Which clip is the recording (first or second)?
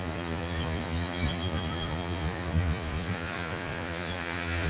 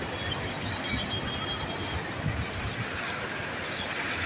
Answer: second